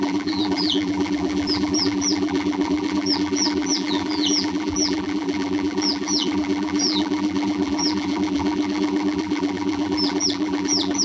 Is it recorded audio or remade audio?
remade